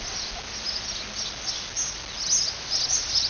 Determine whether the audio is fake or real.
real